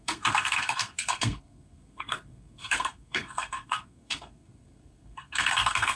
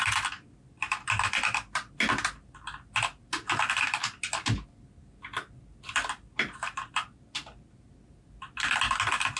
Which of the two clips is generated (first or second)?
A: first